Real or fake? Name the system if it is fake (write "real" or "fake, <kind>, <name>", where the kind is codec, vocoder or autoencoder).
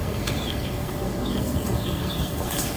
fake, codec, SNAC